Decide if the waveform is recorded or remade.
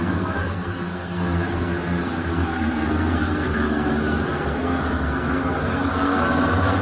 remade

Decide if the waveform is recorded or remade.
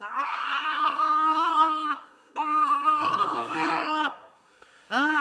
remade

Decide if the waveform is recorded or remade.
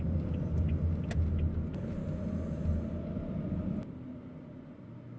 recorded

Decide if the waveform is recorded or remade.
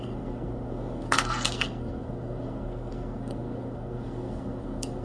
remade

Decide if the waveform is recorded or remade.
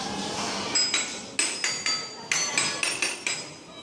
recorded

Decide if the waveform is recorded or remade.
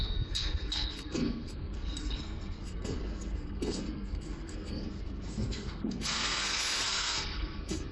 remade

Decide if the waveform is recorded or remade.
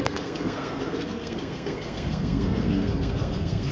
remade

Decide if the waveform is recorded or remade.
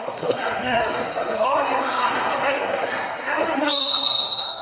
remade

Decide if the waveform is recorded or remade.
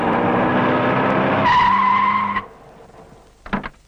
recorded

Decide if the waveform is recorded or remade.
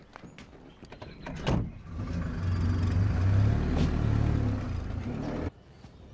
recorded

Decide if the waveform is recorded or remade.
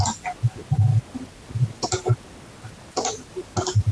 recorded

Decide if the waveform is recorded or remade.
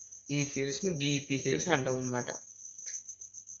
remade